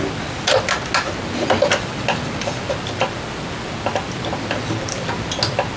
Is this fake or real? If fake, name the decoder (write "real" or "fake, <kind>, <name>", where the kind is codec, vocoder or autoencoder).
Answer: real